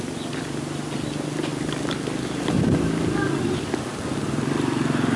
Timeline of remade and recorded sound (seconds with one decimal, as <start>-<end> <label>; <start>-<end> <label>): 0.0-5.2 recorded